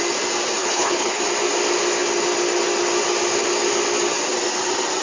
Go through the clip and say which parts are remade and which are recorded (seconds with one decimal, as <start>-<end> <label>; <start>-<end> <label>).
0.0-0.6 recorded; 0.6-1.2 remade; 1.2-5.0 recorded